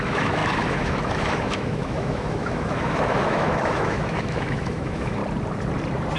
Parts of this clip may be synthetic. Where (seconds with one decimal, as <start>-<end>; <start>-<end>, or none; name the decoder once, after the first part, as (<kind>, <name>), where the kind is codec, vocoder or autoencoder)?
0.0-5.2 (autoencoder, DAC-VAE)